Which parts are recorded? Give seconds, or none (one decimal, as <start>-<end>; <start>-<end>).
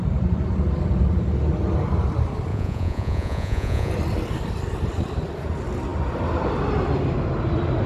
0.0-2.5; 3.9-7.9